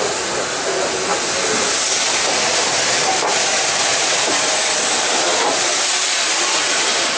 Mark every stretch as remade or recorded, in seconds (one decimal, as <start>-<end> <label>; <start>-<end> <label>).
0.0-3.0 recorded; 3.0-4.4 remade; 4.4-5.1 recorded; 5.1-5.8 remade; 5.8-7.2 recorded